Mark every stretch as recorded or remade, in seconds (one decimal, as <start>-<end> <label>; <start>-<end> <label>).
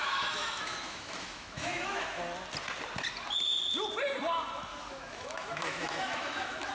0.0-2.2 remade; 2.2-4.7 recorded; 4.7-6.7 remade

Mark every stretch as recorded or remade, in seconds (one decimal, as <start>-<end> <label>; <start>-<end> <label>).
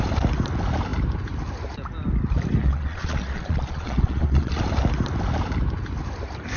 0.0-2.6 recorded; 2.6-4.6 remade; 4.6-6.6 recorded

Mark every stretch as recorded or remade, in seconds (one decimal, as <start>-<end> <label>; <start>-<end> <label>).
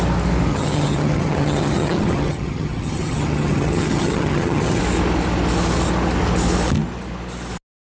0.0-0.5 recorded; 0.5-4.8 remade; 4.8-7.9 recorded